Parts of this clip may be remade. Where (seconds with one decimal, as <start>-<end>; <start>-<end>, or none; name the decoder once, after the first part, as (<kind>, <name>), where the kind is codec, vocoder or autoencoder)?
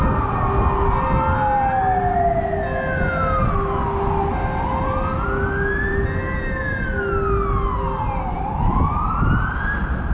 none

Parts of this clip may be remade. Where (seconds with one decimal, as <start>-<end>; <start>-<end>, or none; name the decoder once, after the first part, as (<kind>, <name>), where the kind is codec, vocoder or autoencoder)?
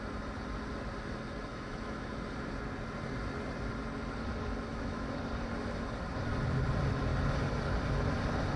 1.5-2.1 (autoencoder, DAC-VAE); 4.7-5.2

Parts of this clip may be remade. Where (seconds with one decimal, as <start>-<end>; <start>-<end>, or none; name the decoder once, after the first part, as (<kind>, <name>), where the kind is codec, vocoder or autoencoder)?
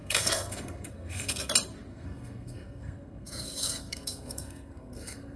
0.0-1.5 (codec, SNAC); 1.9-5.4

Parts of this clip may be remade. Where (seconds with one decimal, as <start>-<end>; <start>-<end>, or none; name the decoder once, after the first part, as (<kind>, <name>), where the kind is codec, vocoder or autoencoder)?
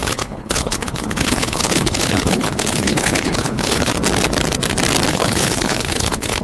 0.0-3.9 (codec, HILCodec); 5.1-6.4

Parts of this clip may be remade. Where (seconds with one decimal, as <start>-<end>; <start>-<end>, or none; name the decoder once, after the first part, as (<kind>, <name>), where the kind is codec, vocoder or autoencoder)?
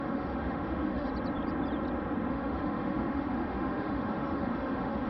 0.0-1.1 (autoencoder, DAC-VAE); 2.3-5.1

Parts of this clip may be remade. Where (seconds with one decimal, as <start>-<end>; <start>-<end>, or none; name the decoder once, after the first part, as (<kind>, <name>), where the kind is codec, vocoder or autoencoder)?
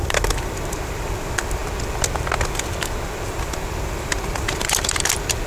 0.0-1.6 (vocoder, BigVGAN v2); 3.4-5.5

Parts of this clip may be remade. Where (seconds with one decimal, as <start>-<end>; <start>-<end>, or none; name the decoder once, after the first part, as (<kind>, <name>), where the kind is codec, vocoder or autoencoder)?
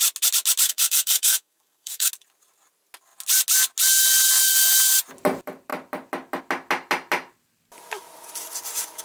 0.7-2.1 (codec, SNAC)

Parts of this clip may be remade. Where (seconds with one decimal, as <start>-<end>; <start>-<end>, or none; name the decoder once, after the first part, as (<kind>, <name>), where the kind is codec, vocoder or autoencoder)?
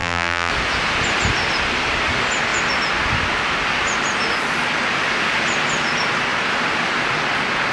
0.0-0.5 (vocoder, BigVGAN v2)